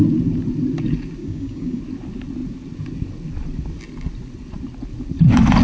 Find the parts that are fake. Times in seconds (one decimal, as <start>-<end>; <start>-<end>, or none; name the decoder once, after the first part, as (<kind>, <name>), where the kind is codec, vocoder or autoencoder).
1.2-1.8 (codec, DAC)